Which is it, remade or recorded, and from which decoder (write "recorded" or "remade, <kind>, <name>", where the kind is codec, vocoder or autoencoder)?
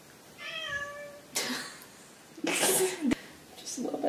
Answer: recorded